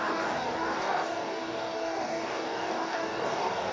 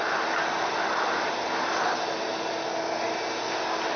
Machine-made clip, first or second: first